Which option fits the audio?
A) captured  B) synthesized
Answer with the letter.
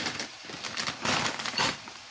B